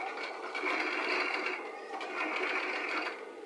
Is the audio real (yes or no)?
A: yes